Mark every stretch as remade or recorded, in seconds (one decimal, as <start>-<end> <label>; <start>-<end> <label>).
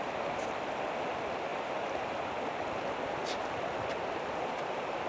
0.0-5.1 recorded